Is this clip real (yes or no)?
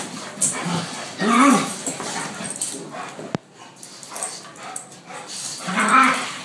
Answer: yes